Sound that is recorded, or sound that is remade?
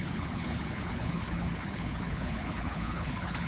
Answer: remade